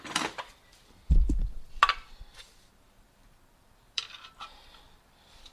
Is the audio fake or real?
fake